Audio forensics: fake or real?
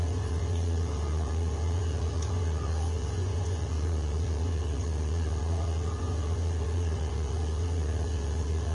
fake